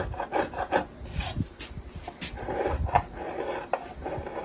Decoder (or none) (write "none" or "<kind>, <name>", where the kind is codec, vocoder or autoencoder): none